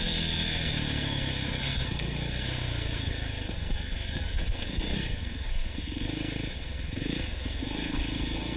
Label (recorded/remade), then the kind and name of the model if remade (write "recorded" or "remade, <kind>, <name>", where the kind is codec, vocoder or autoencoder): remade, codec, SNAC